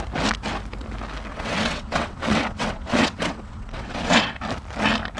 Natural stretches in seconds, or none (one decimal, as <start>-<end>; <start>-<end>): 0.0-1.3; 4.4-5.2